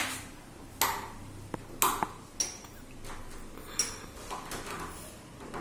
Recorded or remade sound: recorded